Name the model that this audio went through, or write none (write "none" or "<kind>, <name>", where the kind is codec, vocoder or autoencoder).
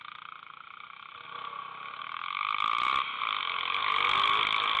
none